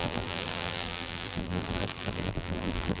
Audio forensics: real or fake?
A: fake